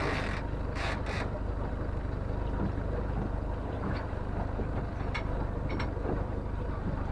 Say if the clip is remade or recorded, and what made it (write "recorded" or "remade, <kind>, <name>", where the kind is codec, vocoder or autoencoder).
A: recorded